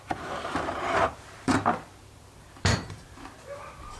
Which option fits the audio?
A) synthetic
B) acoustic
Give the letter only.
A